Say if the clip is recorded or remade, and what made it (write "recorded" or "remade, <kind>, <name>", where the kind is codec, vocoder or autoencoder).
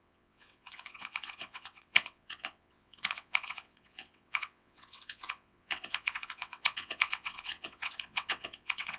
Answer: remade, vocoder, WaveNeXt